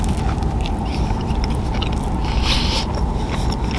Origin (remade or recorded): recorded